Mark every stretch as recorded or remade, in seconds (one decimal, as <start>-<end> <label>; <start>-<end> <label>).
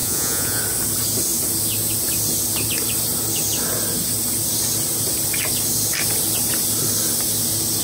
0.0-0.6 remade; 0.6-7.8 recorded